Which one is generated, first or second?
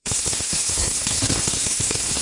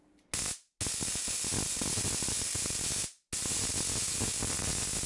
first